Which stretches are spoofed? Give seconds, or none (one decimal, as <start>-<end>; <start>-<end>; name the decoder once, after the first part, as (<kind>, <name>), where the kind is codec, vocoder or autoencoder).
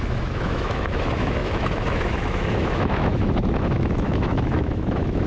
0.0-5.3 (autoencoder, DAC-VAE)